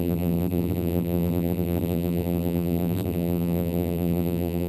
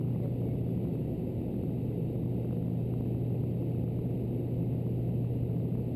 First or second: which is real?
second